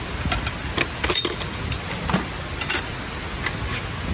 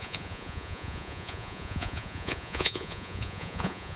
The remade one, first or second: second